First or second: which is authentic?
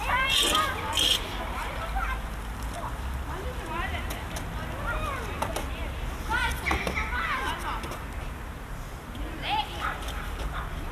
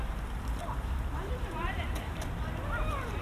first